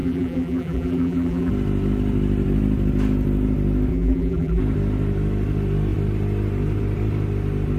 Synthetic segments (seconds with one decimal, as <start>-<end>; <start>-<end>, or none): 0.0-1.5; 3.9-4.6